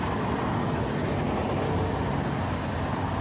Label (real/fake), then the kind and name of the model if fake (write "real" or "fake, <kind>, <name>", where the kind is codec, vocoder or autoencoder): real